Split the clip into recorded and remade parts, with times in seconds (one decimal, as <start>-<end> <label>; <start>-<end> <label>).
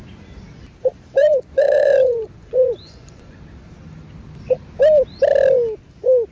0.0-1.2 recorded; 1.2-3.4 remade; 3.4-6.3 recorded